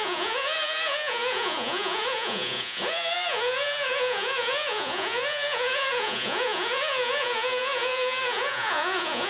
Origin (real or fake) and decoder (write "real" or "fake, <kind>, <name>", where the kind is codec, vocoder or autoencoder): fake, vocoder, Vocos